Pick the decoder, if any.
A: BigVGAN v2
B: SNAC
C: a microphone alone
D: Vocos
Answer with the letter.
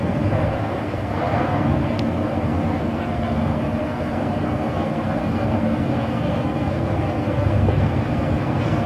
B